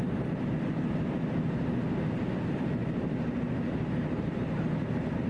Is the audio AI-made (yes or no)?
no